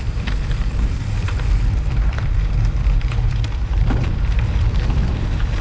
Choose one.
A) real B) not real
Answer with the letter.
B